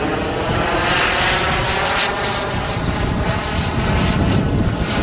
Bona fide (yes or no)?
yes